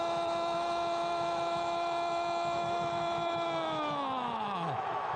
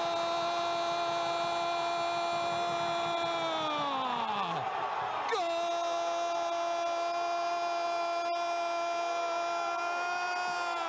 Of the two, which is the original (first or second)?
second